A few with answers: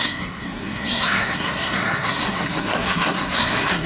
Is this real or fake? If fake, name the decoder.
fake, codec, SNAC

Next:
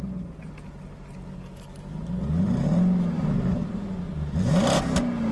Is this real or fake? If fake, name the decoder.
real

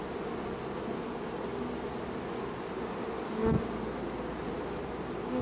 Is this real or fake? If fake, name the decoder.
real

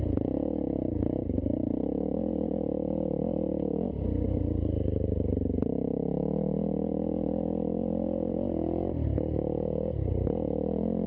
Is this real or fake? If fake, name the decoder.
real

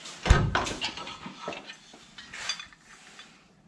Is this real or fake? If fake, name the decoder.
real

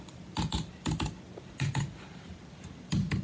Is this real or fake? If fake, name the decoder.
real